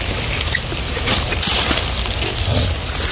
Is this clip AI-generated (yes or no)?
no